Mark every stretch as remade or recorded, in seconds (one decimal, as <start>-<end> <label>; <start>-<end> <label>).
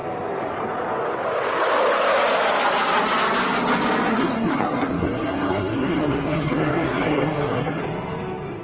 0.0-4.1 recorded; 4.1-7.8 remade; 7.8-8.6 recorded